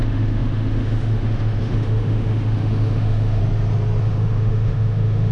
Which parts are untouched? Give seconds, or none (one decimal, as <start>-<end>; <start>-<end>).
3.4-4.0